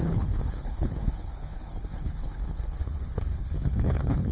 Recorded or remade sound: remade